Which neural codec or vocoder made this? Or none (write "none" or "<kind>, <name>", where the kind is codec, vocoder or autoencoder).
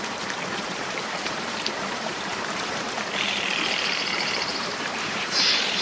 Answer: vocoder, BigVGAN v2